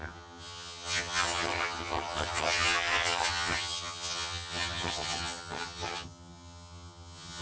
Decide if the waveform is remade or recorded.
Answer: remade